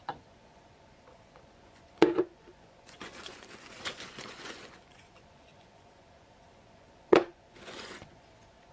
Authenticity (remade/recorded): remade